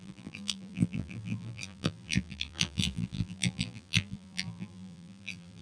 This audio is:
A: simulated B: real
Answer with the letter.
A